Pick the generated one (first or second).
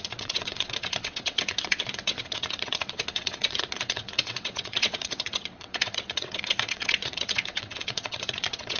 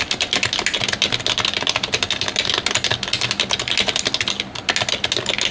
first